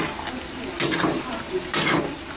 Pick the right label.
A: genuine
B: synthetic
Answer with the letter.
A